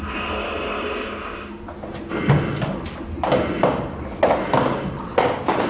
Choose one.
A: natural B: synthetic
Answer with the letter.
A